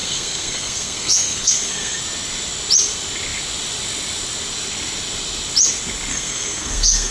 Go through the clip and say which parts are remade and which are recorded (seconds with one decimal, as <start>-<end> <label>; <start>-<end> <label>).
0.0-2.0 remade; 2.0-6.1 recorded; 6.1-7.1 remade